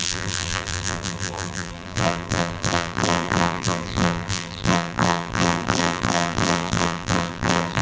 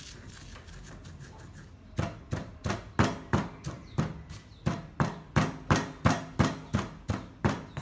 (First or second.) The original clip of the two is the second